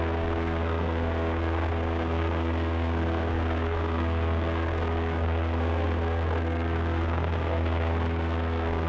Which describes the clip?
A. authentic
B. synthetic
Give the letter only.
B